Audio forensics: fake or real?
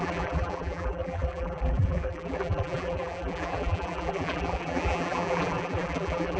fake